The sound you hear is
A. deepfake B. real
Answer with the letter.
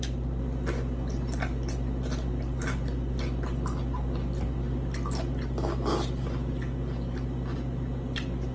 B